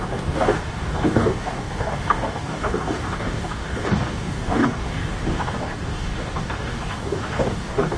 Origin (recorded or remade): remade